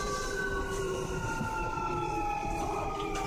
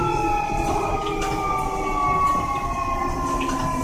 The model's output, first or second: first